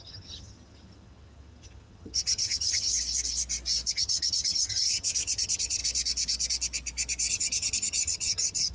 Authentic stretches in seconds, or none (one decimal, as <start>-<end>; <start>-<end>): 2.9-3.9; 5.8-7.3